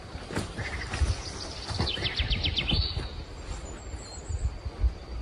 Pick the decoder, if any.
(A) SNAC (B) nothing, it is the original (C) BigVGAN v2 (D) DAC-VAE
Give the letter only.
C